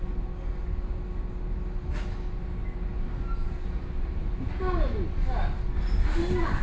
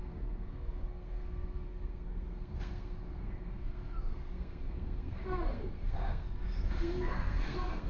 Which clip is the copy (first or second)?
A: second